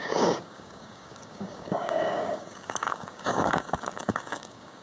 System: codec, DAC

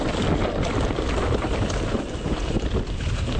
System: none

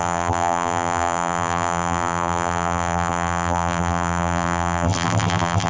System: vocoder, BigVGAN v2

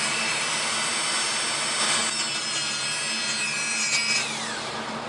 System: vocoder, BigVGAN v2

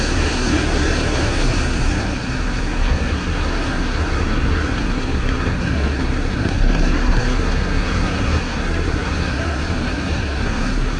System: codec, SNAC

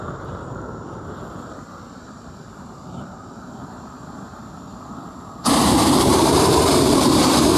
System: vocoder, BigVGAN v2